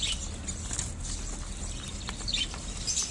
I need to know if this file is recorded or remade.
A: recorded